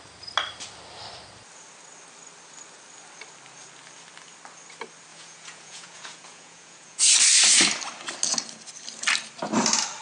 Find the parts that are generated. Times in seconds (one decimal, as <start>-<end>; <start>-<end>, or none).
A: 5.1-7.1